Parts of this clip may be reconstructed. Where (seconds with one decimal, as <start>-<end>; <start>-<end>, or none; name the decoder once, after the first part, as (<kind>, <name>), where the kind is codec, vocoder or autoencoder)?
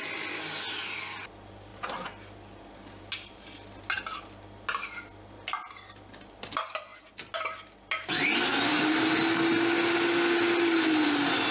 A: 8.5-9.2 (vocoder, BigVGAN v2)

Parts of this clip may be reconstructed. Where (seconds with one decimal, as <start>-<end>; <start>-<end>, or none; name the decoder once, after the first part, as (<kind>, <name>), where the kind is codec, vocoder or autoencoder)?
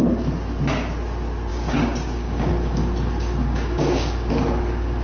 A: 1.5-2.5 (codec, DAC); 3.4-4.3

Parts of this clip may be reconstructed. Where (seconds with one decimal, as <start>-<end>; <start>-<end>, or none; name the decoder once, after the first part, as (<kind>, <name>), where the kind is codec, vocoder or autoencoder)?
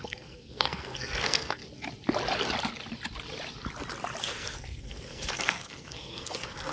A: 0.0-1.6 (codec, SNAC); 4.2-6.7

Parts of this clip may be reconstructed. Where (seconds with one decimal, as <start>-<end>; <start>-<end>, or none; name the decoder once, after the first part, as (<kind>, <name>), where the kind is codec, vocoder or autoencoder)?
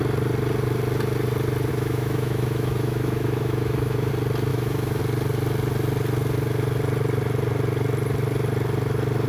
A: 1.7-4.1 (autoencoder, DAC-VAE); 4.5-5.0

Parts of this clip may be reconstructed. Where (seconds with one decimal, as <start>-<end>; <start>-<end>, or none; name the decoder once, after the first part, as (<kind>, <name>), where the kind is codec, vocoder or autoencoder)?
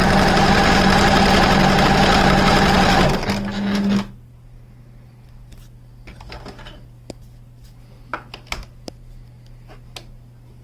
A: none